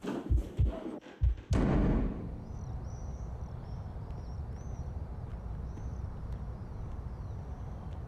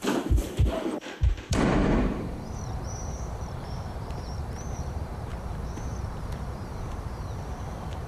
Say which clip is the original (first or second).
first